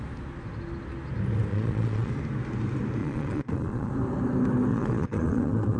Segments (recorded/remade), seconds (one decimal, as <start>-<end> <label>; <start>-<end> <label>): 0.0-1.5 recorded; 1.5-2.1 remade; 2.1-3.0 recorded; 3.0-3.9 remade; 3.9-4.7 recorded; 4.7-5.8 remade